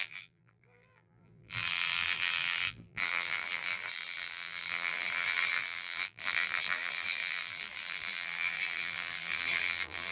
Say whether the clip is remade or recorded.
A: remade